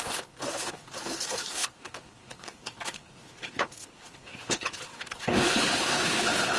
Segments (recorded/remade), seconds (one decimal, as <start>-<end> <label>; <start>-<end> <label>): 0.0-6.6 remade